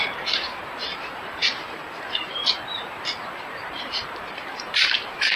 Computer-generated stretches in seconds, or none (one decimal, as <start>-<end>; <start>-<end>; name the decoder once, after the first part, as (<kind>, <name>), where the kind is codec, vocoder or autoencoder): 0.0-1.4 (vocoder, BigVGAN v2); 2.0-2.4; 3.4-5.4